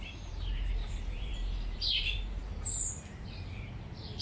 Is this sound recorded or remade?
remade